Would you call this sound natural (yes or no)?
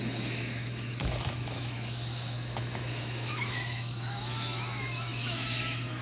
no